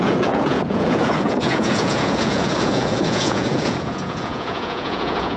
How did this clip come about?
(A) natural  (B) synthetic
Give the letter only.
B